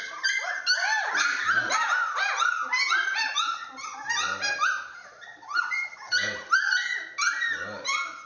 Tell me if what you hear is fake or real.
real